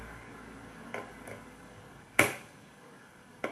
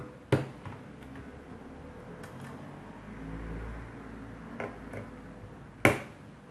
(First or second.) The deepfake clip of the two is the first